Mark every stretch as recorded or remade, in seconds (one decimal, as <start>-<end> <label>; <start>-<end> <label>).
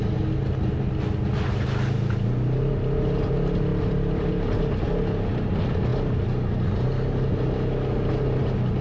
0.0-3.7 recorded; 3.7-5.4 remade; 5.4-8.8 recorded